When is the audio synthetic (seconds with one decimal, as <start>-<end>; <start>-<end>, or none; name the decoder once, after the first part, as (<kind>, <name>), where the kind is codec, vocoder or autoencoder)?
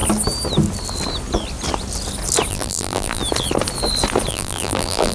2.5-3.2 (vocoder, BigVGAN v2); 4.3-5.1